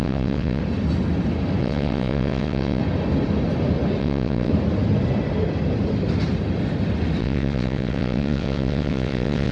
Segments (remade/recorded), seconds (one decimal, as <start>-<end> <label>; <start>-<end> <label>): 0.0-0.6 remade; 0.6-1.6 recorded; 1.6-2.8 remade; 2.8-4.0 recorded; 4.0-4.5 remade; 4.5-7.2 recorded; 7.2-9.5 remade